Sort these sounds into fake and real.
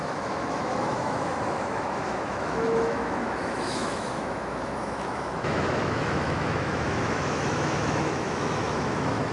fake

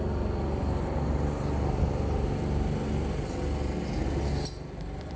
real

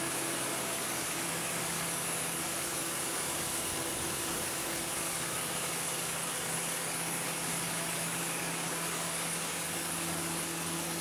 fake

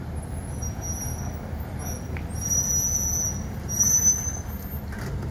real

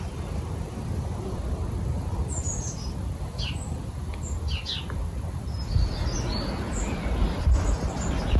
real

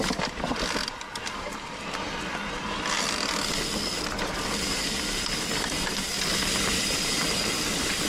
real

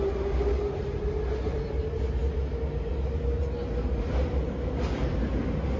real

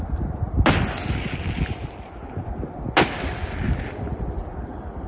real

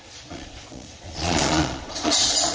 fake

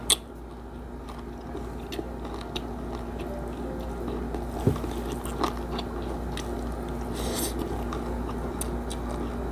real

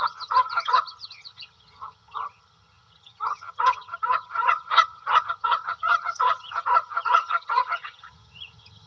fake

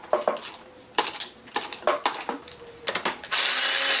real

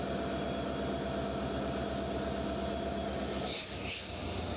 real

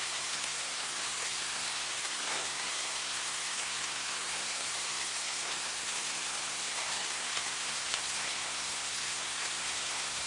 fake